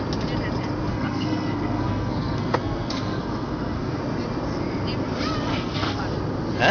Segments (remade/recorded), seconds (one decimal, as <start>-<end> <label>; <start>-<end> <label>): 0.0-0.9 recorded; 0.9-4.0 remade; 4.0-5.5 recorded; 5.5-6.0 remade; 6.0-6.7 recorded